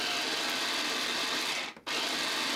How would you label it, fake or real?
real